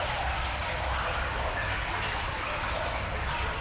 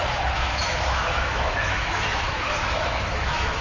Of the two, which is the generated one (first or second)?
second